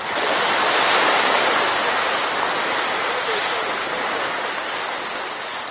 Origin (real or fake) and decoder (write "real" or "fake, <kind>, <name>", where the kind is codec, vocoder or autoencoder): real